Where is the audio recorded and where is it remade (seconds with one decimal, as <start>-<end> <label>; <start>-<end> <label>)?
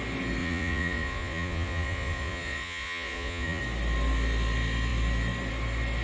0.0-0.4 recorded; 0.4-3.6 remade; 3.6-6.0 recorded